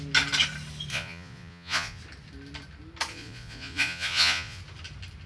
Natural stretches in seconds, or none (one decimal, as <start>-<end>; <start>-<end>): 0.0-0.9; 2.0-3.1; 4.6-5.3